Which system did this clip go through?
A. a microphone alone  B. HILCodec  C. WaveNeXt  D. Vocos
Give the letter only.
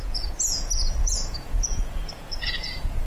D